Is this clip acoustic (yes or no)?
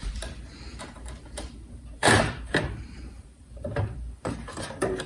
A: no